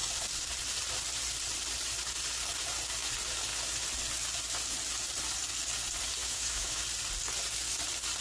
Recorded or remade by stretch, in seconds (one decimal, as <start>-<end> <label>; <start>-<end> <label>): 0.0-6.2 recorded; 6.2-6.8 remade; 6.8-8.2 recorded